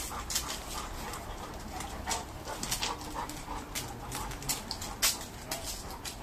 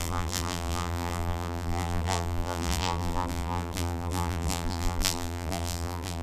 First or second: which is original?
first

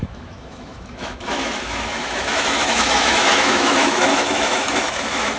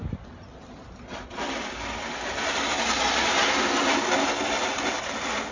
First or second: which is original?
second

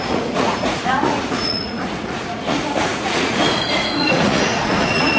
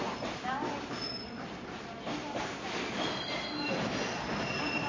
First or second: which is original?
second